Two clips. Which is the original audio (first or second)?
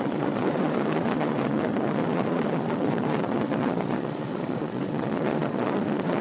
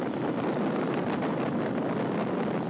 second